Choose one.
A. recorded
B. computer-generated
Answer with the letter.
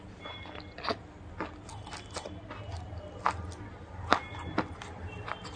A